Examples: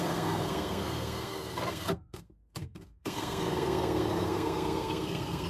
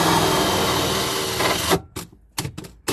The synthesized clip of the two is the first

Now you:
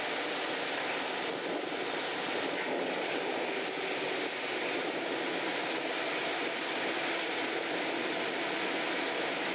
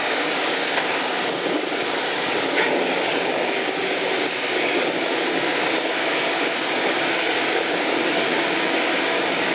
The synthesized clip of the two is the second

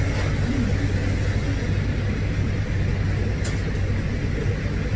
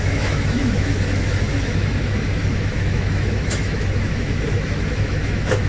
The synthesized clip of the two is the second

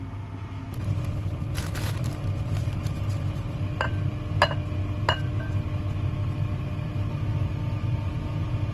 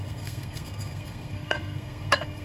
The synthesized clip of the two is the second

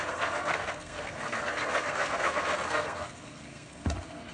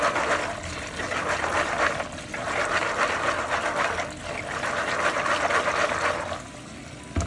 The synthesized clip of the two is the first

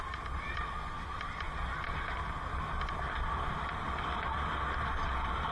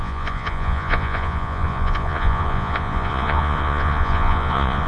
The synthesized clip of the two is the second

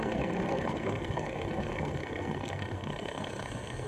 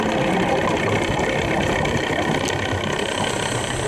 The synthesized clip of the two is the first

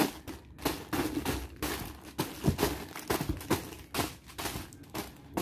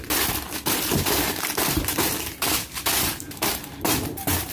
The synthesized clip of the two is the second